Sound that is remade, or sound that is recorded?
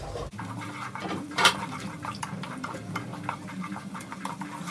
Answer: remade